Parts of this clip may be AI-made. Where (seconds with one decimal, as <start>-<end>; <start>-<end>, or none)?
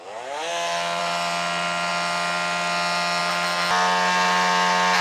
none